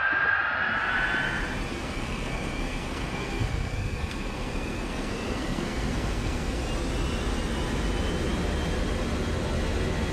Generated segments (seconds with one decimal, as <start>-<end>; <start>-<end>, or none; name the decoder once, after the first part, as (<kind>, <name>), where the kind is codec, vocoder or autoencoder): 1.7-6.6 (codec, SNAC)